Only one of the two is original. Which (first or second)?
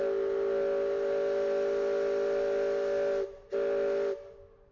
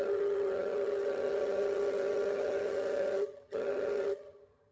first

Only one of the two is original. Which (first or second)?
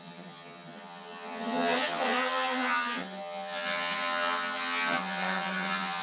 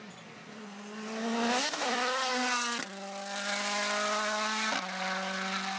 second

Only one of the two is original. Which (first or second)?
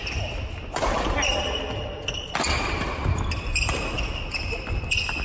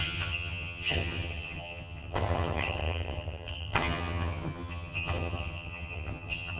first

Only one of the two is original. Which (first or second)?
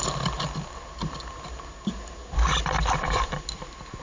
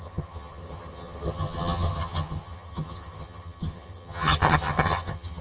first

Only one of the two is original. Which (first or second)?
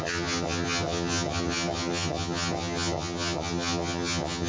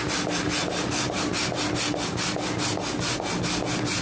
second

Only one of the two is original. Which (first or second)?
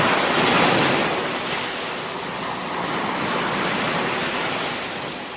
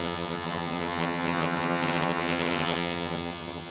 first